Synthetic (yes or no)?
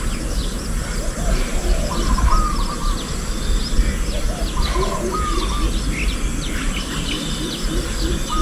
no